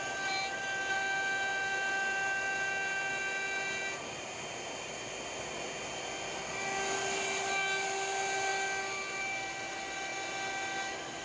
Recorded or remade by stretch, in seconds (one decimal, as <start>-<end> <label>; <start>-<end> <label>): 0.0-11.2 recorded